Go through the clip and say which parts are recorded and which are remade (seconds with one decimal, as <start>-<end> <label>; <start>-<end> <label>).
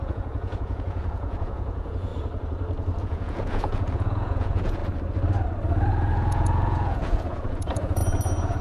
0.0-2.1 remade; 2.1-3.0 recorded; 3.0-4.8 remade; 4.8-5.9 recorded; 5.9-8.0 remade; 8.0-8.6 recorded